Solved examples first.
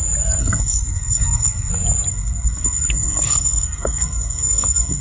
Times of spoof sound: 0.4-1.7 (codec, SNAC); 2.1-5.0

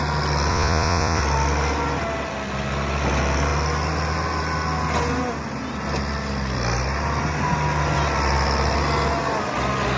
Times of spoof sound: 0.5-1.2 (vocoder, Vocos)

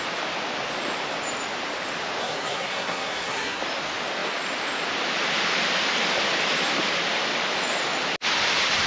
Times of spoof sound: 2.2-3.6 (codec, SNAC)

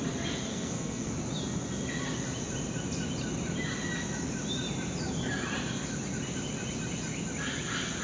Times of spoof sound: 0.5-1.1 (codec, SNAC)

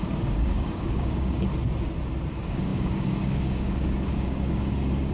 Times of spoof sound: 0.0-1.5 (codec, DAC); 2.3-5.1

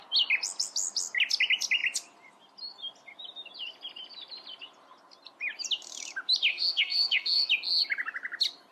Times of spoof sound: 6.5-7.5 (codec, SNAC)